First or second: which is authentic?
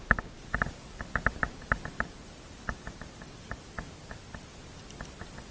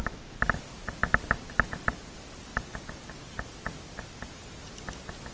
second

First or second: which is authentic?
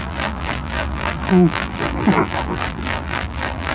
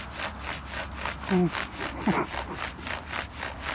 second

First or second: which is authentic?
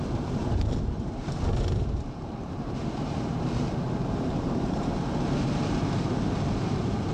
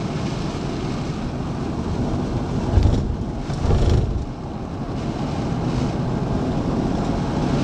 second